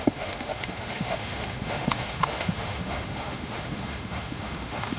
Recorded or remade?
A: remade